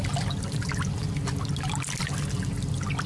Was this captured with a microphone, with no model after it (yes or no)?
yes